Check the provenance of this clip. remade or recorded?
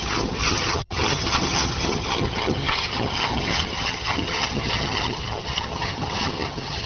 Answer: remade